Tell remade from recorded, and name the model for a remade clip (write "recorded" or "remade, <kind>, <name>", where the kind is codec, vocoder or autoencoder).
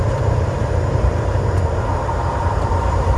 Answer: remade, vocoder, BigVGAN v2